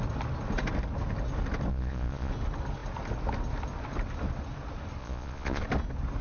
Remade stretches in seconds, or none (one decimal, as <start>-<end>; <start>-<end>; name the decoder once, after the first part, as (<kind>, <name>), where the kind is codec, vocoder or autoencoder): 1.7-2.3 (vocoder, Vocos); 5.0-5.6